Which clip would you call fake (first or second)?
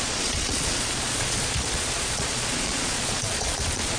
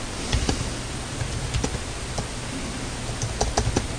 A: first